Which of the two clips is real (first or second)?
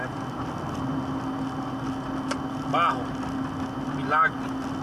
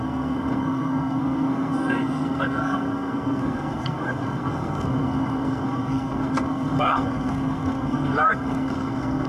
first